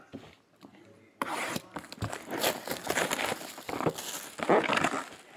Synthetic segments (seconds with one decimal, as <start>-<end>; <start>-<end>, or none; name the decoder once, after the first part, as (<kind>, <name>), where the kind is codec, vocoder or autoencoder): 0.7-3.5 (vocoder, BigVGAN v2)